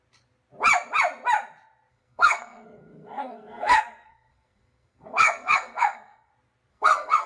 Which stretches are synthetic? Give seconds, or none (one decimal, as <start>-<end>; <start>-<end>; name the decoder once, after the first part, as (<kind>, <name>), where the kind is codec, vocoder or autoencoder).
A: 1.9-6.3 (codec, SNAC); 6.7-7.3